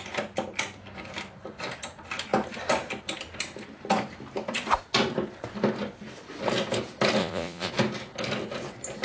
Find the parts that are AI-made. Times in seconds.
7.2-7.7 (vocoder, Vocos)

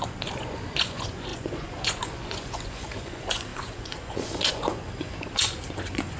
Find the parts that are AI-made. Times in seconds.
0.0-6.2 (vocoder, Vocos)

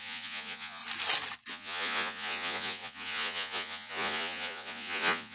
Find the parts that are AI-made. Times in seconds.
0.0-0.8 (vocoder, Vocos); 1.5-5.3

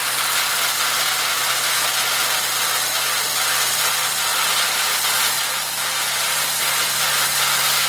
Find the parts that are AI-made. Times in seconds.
none

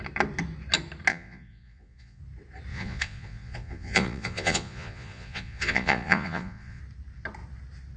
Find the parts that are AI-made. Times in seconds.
1.1-2.2 (vocoder, Vocos); 2.7-6.8

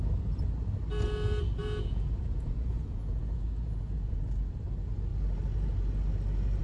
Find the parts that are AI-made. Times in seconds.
1.6-4.2 (vocoder, Vocos)

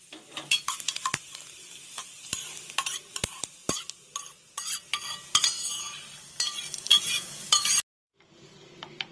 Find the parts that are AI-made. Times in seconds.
6.9-7.7 (vocoder, Vocos)

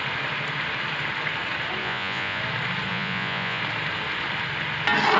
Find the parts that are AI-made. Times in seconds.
1.8-2.4 (vocoder, Vocos); 2.9-3.6